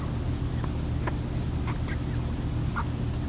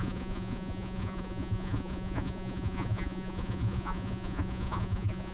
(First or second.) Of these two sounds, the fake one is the second